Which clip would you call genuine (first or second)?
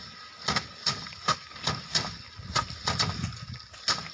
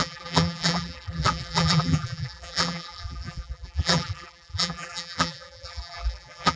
first